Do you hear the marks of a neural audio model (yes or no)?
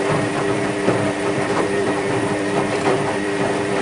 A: yes